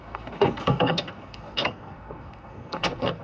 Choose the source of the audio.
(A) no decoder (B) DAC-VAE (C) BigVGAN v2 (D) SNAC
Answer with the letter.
D